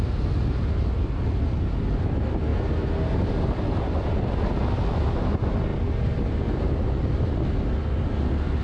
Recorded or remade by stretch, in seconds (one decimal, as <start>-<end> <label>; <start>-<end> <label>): 0.0-8.6 recorded